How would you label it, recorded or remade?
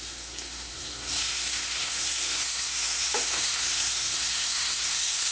remade